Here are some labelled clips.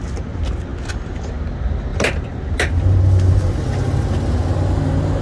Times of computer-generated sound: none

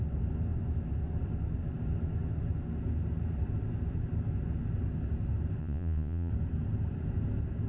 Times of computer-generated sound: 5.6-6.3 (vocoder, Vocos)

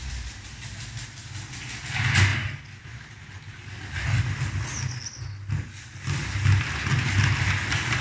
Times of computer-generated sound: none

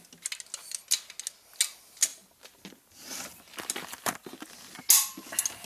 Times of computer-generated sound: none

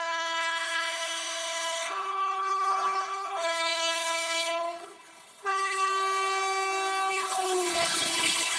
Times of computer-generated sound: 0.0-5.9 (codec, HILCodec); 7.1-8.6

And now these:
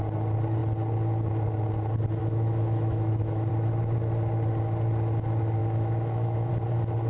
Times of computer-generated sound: 2.2-3.5 (autoencoder, DAC-VAE); 5.6-6.5

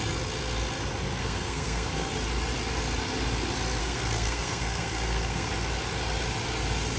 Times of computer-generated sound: 1.2-2.1 (codec, SNAC); 3.8-5.5

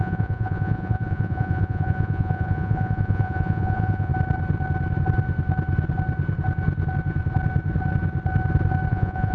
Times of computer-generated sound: 0.0-4.1 (vocoder, Vocos); 8.9-9.3